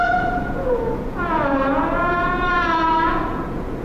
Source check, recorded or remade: remade